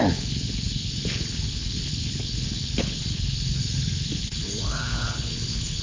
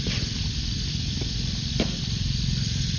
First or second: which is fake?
first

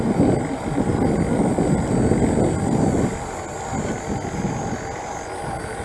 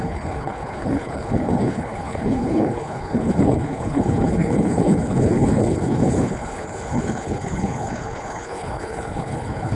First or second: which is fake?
second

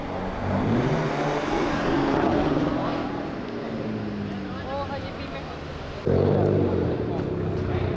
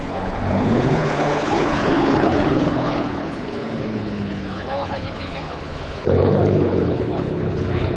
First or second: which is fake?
second